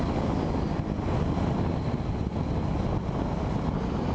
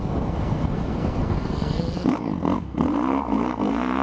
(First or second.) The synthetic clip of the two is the second